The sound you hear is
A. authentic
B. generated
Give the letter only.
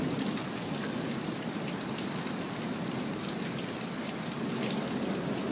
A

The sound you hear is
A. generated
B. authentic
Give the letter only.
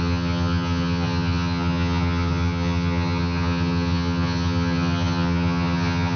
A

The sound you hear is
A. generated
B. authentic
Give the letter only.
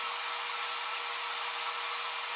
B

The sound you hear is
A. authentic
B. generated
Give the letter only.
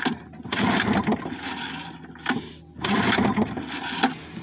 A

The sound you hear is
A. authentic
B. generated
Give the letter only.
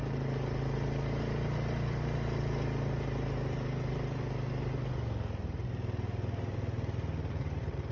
A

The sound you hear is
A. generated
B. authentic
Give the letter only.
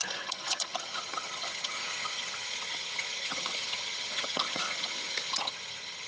A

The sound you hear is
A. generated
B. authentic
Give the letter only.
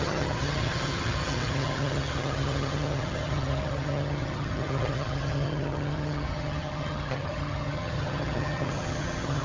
A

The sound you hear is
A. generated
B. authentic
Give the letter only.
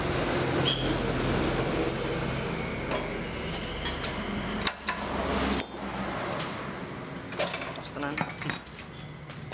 B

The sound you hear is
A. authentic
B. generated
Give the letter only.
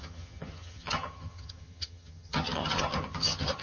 B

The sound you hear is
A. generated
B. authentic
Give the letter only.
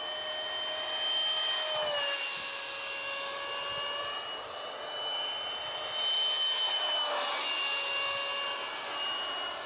B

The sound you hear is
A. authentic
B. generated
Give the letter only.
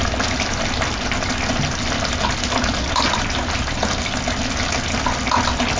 A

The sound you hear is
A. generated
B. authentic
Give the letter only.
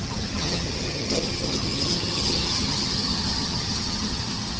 A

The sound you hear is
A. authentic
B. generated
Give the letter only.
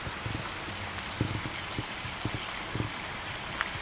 A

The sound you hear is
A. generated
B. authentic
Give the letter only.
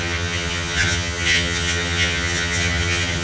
A